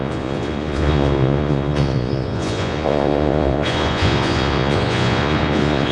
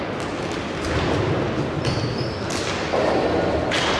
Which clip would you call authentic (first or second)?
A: second